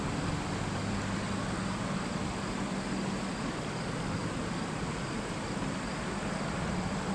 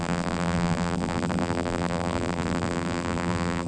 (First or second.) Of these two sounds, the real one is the first